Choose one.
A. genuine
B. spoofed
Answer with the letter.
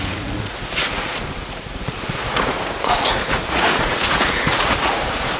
B